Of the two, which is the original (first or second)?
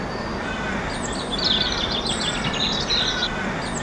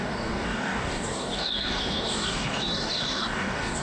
first